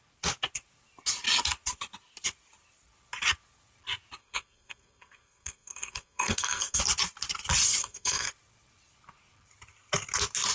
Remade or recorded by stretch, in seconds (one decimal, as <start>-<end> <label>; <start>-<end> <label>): 0.0-4.2 recorded; 4.2-6.8 remade; 6.8-7.8 recorded; 7.8-8.3 remade; 8.3-10.5 recorded